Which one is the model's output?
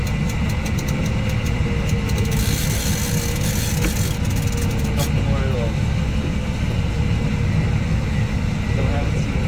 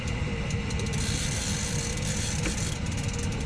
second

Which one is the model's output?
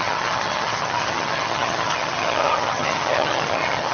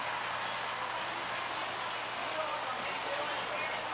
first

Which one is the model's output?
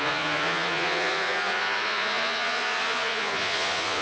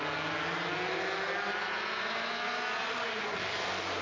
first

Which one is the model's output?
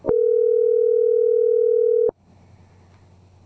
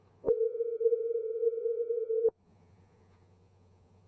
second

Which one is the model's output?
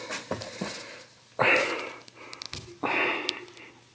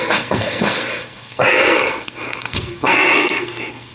second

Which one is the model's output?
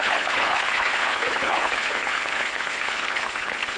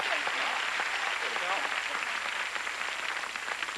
first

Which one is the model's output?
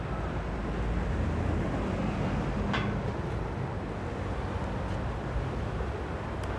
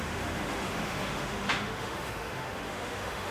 second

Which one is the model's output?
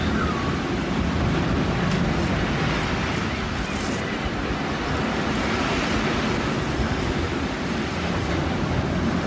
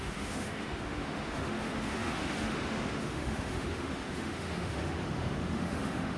second